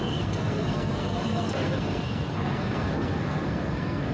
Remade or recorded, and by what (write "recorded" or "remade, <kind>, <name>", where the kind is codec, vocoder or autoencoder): remade, codec, SNAC